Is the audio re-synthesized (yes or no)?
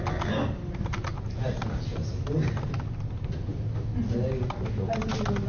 no